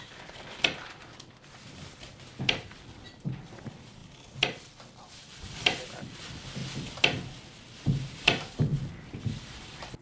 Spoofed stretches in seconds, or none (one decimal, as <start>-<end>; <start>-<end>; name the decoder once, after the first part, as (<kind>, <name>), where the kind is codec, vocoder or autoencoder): 0.0-2.1 (vocoder, BigVGAN v2); 2.7-6.6; 8.1-8.7; 9.2-10.0